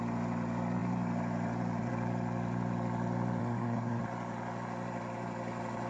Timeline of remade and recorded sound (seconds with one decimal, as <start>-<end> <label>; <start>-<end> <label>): 0.0-3.4 recorded; 3.4-4.0 remade; 4.0-5.9 recorded